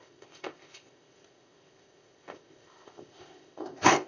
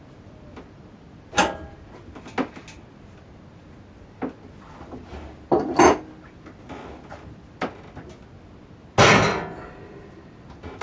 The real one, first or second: second